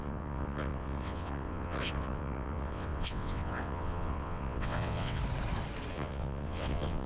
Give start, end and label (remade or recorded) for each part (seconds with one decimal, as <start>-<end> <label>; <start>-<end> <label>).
0.0-5.2 remade; 5.2-5.9 recorded; 5.9-7.1 remade